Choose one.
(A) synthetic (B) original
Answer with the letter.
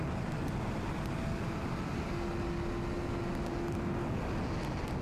B